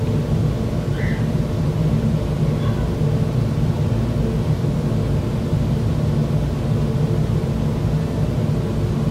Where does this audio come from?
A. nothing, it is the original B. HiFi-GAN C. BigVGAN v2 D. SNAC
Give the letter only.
A